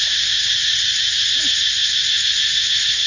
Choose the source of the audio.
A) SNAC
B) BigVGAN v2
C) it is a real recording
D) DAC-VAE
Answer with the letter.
C